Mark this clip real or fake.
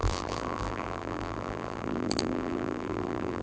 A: fake